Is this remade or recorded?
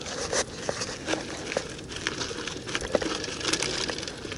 recorded